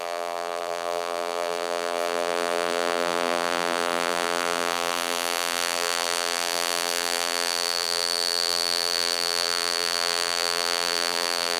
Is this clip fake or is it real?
fake